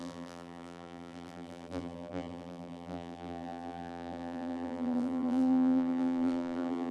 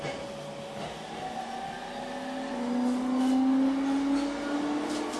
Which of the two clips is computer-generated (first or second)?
first